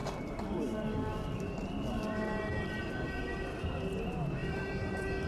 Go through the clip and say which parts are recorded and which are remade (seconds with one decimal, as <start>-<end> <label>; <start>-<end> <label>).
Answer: 0.0-3.2 remade; 3.2-4.4 recorded; 4.4-5.3 remade

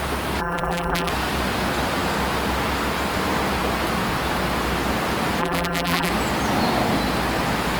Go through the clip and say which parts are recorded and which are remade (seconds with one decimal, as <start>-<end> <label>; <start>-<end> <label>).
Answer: 0.0-0.4 recorded; 0.4-1.1 remade; 1.1-5.4 recorded; 5.4-6.1 remade; 6.1-7.8 recorded

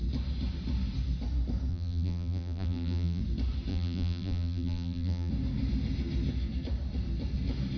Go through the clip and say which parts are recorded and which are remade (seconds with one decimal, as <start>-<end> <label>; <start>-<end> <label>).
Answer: 0.0-1.7 recorded; 1.7-3.2 remade; 3.2-3.7 recorded; 3.7-5.3 remade; 5.3-7.8 recorded